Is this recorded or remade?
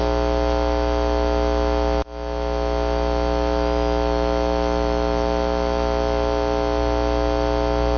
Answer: recorded